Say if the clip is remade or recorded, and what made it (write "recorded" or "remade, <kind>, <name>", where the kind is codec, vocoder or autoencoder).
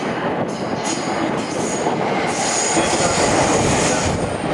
recorded